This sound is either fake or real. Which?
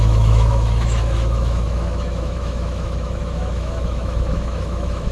fake